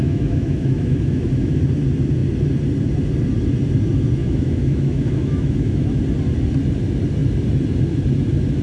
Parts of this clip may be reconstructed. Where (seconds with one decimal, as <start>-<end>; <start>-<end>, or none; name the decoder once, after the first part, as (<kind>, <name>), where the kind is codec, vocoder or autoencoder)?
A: 0.0-1.6 (autoencoder, DAC-VAE); 4.2-6.0